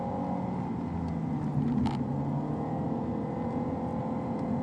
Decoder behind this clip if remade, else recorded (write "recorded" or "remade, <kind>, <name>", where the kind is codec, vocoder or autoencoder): recorded